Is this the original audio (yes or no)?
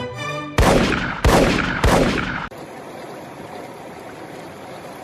no